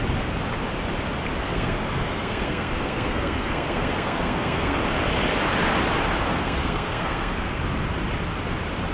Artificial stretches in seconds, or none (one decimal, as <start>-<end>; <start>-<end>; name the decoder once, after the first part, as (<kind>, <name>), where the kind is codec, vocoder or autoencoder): 1.4-4.8 (codec, SNAC); 6.3-7.6